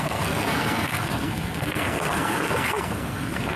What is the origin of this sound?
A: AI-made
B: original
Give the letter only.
A